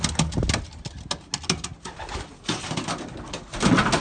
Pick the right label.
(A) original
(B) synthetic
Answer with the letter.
A